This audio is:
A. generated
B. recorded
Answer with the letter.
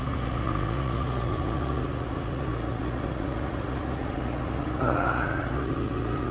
A